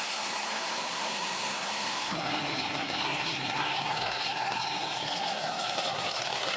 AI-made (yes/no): yes